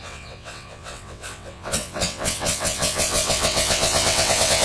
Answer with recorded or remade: remade